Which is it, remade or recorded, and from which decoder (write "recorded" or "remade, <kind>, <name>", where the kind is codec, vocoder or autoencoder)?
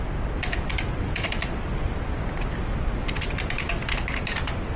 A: recorded